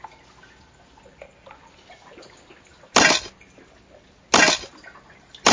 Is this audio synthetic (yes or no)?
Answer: no